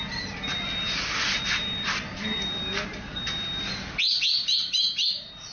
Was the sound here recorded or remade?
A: recorded